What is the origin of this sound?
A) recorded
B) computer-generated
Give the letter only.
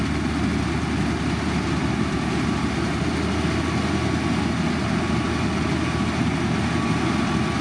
A